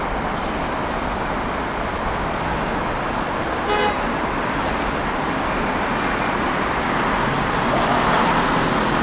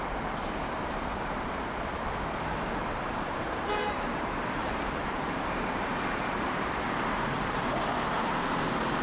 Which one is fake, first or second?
second